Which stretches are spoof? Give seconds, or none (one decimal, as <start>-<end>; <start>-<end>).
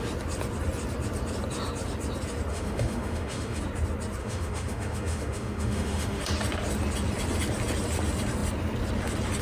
2.5-3.6; 4.2-6.2